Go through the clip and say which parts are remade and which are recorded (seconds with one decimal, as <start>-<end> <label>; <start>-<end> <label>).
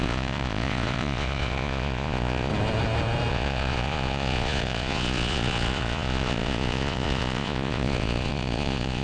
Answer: 0.0-2.5 remade; 2.5-3.3 recorded; 3.3-9.0 remade